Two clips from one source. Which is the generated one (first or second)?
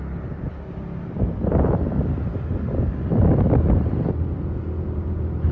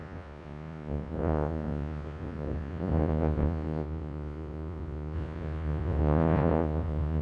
second